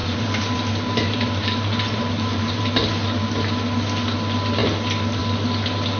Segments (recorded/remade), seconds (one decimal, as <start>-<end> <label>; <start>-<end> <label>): 0.0-2.9 remade; 2.9-6.0 recorded